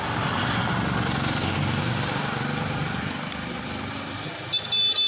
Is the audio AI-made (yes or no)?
no